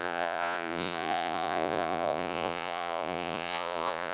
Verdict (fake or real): fake